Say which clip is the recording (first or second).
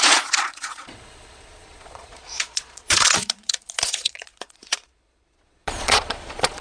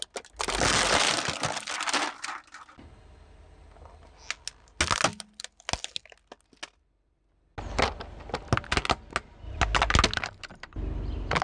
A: second